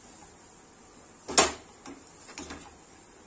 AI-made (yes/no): no